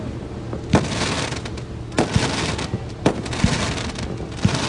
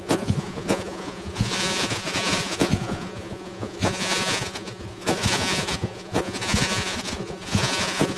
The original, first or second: first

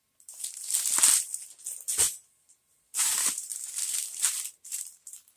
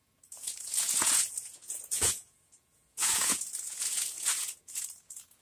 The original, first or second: first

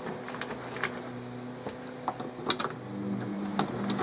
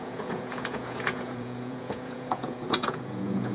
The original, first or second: first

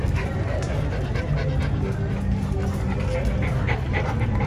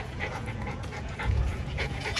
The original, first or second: first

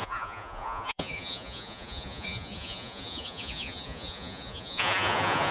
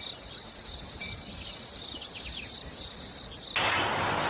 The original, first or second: second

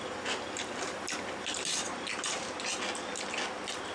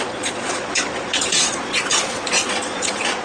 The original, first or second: first